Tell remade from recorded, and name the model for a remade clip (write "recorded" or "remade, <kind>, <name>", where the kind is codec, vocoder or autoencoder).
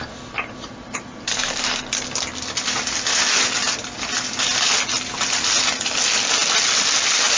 recorded